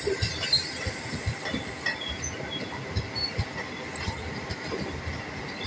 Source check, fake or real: real